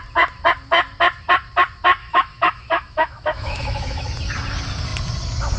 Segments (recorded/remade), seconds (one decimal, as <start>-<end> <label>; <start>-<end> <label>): 0.0-2.0 recorded; 2.0-4.1 remade; 4.1-5.6 recorded